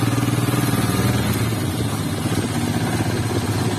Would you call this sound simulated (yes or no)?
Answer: no